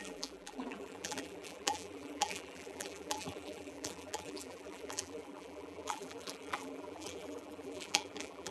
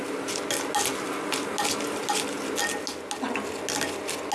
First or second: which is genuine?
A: second